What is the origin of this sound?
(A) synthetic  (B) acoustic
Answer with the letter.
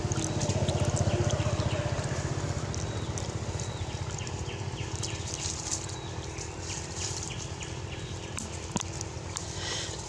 B